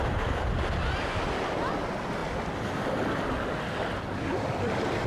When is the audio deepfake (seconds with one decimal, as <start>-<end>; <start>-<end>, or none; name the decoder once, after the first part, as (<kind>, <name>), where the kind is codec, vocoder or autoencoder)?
none